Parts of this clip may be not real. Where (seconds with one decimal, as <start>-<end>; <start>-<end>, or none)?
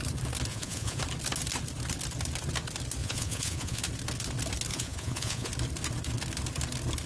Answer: 0.5-1.0; 3.0-3.8; 4.7-5.5